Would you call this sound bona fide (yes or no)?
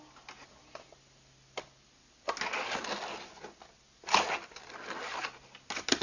yes